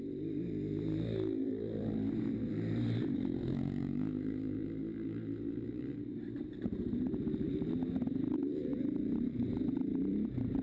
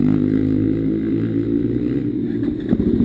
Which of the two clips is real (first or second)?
second